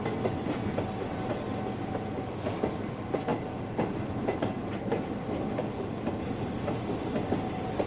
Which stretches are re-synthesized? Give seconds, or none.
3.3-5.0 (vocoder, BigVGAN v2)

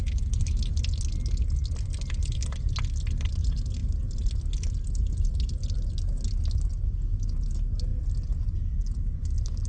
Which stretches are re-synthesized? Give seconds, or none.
7.9-9.7 (vocoder, BigVGAN v2)

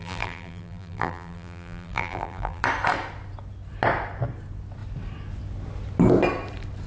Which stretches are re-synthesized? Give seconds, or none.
0.0-2.6 (vocoder, BigVGAN v2)

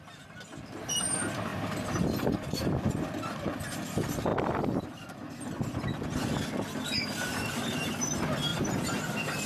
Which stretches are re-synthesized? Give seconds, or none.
1.5-2.9 (vocoder, BigVGAN v2); 8.5-9.5

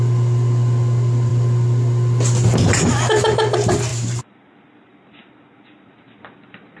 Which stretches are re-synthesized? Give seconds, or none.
3.9-6.2 (vocoder, BigVGAN v2)

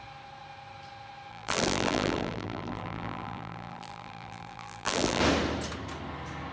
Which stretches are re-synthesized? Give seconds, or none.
1.3-5.2 (vocoder, BigVGAN v2)